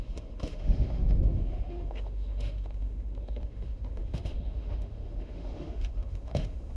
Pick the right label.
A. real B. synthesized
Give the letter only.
B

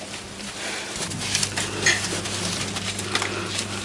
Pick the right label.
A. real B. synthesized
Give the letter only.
A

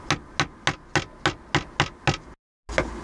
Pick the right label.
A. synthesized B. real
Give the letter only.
B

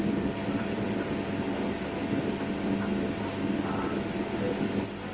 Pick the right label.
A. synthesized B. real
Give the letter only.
B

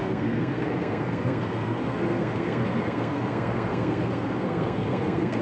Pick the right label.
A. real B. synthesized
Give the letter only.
B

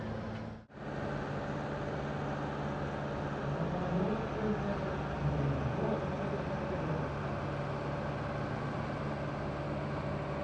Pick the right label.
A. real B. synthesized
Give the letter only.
A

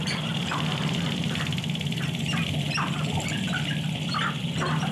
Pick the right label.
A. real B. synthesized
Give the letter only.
A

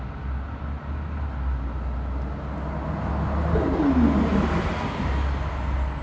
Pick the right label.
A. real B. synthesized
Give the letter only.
A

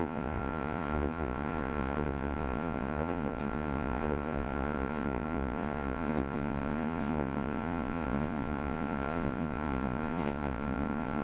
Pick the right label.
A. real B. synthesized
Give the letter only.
B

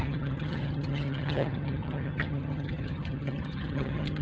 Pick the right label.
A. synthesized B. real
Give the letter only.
A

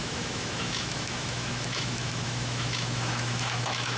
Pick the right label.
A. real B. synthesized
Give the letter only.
B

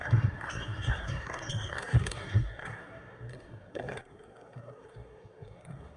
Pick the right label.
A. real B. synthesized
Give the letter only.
B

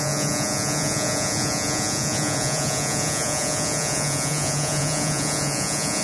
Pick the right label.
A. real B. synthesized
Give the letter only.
B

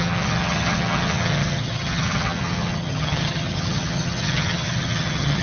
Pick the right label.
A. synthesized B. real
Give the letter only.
A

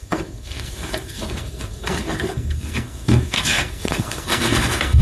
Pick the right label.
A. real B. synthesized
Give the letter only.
B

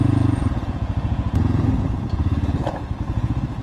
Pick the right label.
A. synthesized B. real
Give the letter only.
A